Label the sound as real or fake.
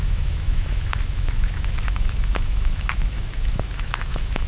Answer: fake